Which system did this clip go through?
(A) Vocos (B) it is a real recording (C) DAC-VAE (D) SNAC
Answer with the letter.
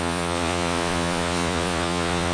A